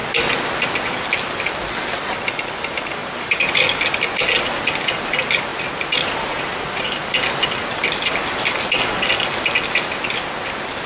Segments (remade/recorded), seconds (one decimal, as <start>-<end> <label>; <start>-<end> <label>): 0.0-3.0 recorded; 3.0-3.5 remade; 3.5-5.5 recorded; 5.5-7.0 remade; 7.0-10.9 recorded